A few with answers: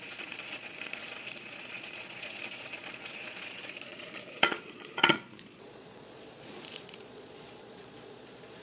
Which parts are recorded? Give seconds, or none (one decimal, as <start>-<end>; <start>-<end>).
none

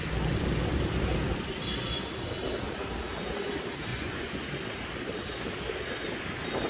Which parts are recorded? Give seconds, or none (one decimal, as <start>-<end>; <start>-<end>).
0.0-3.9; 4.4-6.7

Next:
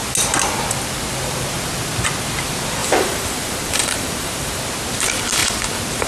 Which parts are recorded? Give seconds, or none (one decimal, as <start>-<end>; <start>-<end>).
0.0-2.8; 4.6-6.1